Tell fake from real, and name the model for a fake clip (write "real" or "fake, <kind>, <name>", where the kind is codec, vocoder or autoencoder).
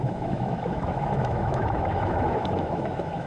fake, autoencoder, DAC-VAE